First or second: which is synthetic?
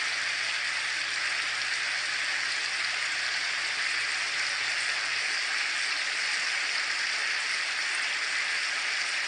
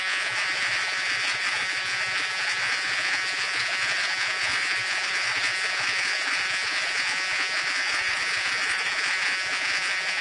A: second